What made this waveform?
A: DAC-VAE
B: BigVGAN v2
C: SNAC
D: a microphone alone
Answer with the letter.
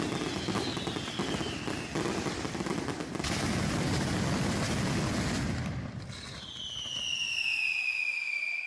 D